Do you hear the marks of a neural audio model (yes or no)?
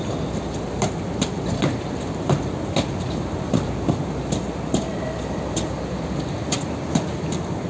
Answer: no